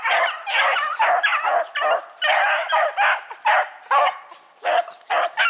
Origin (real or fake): real